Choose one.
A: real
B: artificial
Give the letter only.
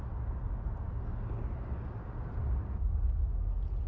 A